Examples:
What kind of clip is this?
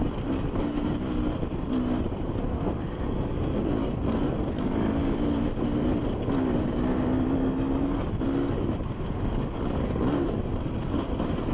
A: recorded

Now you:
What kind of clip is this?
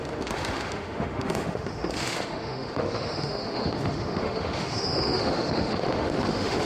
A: remade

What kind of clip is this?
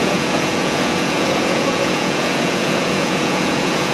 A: remade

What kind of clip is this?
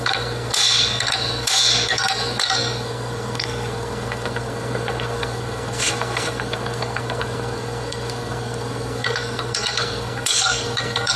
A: remade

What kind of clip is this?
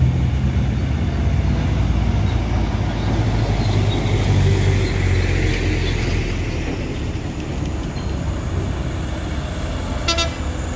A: recorded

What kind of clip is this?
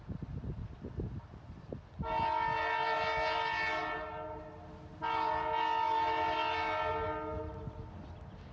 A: recorded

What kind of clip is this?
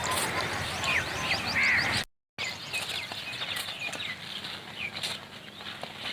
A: recorded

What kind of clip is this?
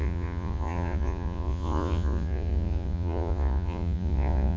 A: remade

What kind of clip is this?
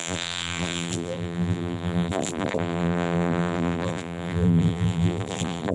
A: remade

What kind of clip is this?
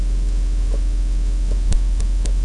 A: remade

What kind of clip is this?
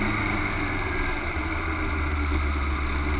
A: recorded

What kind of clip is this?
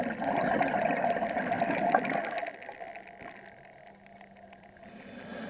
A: recorded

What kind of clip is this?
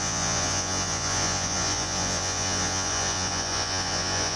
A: remade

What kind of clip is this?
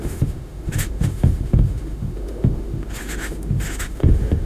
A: remade